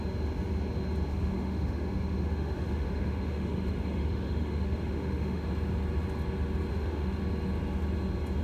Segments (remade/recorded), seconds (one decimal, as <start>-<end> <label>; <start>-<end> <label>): 0.0-1.1 recorded; 1.1-5.4 remade; 5.4-6.7 recorded; 6.7-7.2 remade; 7.2-8.4 recorded